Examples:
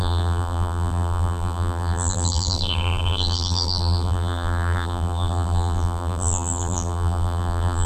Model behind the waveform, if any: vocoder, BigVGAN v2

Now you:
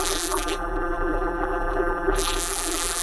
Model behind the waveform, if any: vocoder, BigVGAN v2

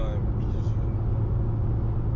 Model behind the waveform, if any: none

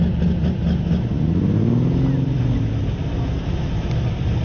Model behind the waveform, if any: none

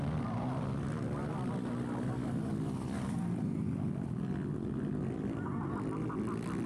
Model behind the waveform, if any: none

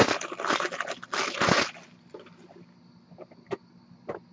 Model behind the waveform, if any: none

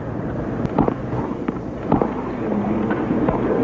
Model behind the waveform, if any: none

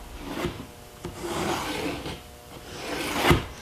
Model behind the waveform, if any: none